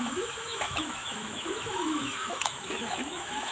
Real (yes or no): no